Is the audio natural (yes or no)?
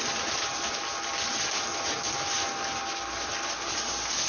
yes